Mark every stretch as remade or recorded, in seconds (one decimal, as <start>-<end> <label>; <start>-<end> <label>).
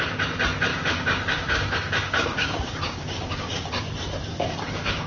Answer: 0.0-0.7 recorded; 0.7-3.8 remade; 3.8-4.3 recorded; 4.3-5.1 remade